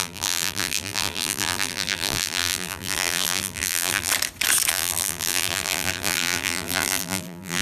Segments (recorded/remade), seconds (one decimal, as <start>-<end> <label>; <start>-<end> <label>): 0.0-4.1 remade; 4.1-4.7 recorded; 4.7-7.6 remade